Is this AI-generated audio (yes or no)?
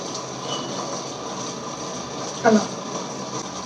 no